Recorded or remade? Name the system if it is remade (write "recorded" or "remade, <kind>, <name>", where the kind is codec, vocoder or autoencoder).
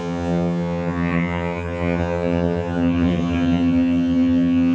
remade, vocoder, HiFi-GAN